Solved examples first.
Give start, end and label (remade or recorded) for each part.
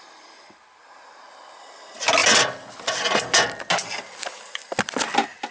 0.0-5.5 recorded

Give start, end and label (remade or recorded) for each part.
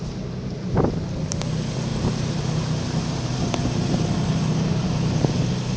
0.0-1.9 recorded; 1.9-5.3 remade; 5.3-5.8 recorded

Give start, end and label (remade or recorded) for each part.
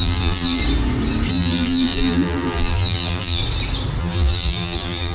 0.0-0.6 remade; 0.6-1.3 recorded; 1.3-3.4 remade; 3.4-4.0 recorded; 4.0-5.1 remade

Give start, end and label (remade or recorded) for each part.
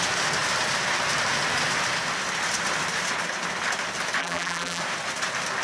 0.0-4.2 recorded; 4.2-4.8 remade; 4.8-5.6 recorded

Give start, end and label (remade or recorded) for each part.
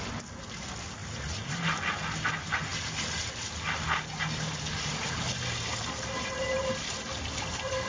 0.0-1.0 recorded; 1.0-1.6 remade; 1.6-7.9 recorded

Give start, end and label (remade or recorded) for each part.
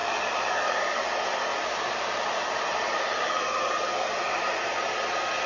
0.0-1.0 remade; 1.0-1.5 recorded; 1.5-3.3 remade; 3.3-5.5 recorded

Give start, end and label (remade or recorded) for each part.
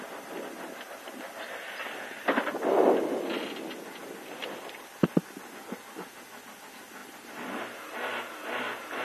0.0-7.0 recorded; 7.0-7.8 remade; 7.8-9.0 recorded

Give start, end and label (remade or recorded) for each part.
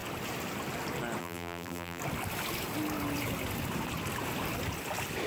0.0-1.2 recorded; 1.2-2.0 remade; 2.0-5.3 recorded